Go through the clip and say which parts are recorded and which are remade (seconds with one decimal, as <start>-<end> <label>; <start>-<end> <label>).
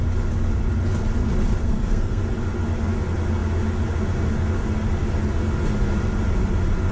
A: 0.0-1.6 recorded; 1.6-2.2 remade; 2.2-6.9 recorded